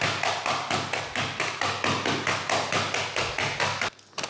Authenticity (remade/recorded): recorded